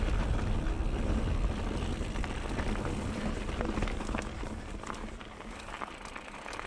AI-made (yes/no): no